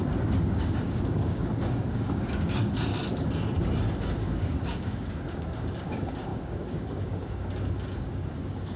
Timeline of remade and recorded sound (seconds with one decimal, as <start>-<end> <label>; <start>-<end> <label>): 0.0-2.9 remade; 2.9-4.0 recorded; 4.0-8.8 remade